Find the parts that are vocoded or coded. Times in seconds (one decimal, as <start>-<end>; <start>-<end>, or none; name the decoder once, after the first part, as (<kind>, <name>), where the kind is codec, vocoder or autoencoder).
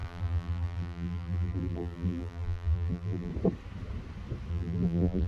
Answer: 0.0-3.3 (vocoder, BigVGAN v2); 4.5-5.3